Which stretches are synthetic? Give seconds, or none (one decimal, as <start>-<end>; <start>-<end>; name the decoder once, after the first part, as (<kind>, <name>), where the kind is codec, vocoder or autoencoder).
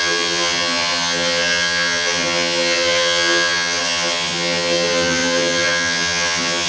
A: 0.0-6.7 (vocoder, HiFi-GAN)